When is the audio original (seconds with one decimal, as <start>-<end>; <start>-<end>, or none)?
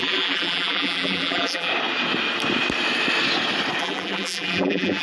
1.7-3.8